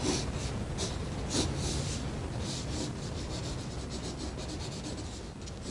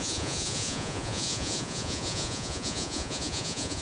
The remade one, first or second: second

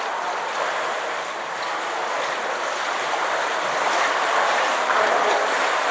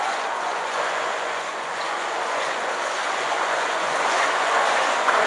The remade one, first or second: second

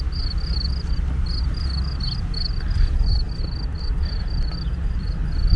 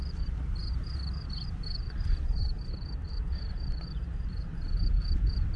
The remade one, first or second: second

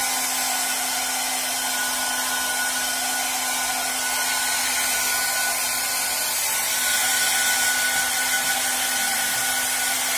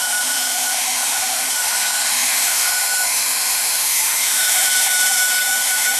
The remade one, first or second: second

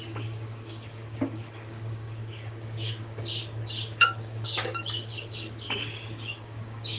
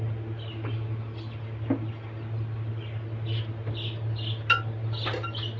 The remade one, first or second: first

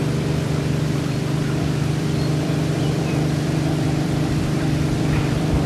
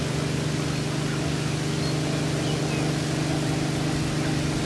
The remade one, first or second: first